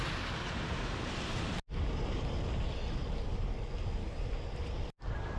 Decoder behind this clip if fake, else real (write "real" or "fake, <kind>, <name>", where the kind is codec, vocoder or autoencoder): real